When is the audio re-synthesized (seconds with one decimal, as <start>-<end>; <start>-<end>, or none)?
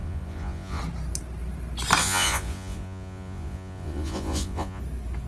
0.0-0.8; 2.0-4.8